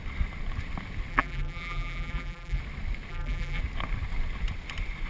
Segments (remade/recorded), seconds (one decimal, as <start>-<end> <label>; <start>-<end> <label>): 0.0-1.1 recorded; 1.1-2.6 remade; 2.6-3.1 recorded; 3.1-3.6 remade; 3.6-5.1 recorded